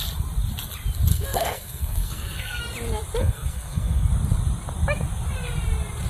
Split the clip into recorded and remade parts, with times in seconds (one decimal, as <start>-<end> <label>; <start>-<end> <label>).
0.0-1.1 recorded; 1.1-2.6 remade; 2.6-3.2 recorded; 3.2-4.1 remade; 4.1-6.1 recorded